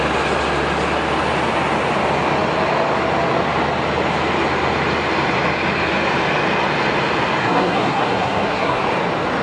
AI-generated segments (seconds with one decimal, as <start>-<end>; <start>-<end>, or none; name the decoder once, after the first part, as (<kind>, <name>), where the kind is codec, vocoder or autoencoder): 7.4-8.8 (codec, SNAC)